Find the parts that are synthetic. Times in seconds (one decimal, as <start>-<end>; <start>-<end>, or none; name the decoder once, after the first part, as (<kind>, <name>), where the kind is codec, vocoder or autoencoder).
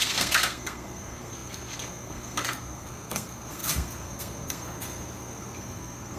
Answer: 0.0-6.2 (codec, SNAC)